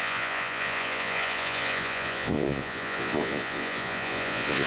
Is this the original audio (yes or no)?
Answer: no